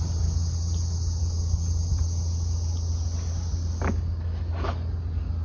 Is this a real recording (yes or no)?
yes